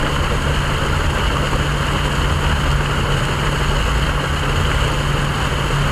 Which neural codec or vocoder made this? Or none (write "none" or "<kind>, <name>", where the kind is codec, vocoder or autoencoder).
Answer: none